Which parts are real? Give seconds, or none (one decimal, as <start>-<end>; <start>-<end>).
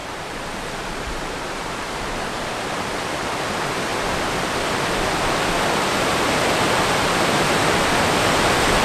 3.9-7.0